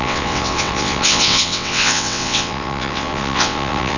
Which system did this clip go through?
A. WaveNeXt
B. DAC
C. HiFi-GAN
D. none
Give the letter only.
A